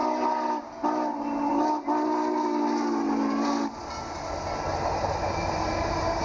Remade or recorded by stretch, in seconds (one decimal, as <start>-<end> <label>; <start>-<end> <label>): 0.0-6.2 recorded